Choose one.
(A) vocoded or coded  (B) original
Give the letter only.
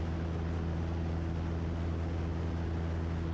B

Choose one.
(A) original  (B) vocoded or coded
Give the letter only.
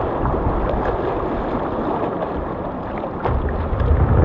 A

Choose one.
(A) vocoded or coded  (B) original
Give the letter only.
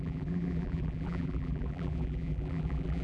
A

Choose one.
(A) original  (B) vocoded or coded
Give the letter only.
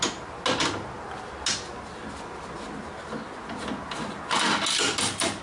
A